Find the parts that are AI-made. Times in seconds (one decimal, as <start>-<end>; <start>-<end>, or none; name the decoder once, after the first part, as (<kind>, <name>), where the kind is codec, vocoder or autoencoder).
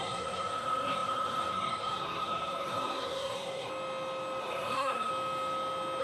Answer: 0.0-3.7 (codec, SNAC); 4.4-5.1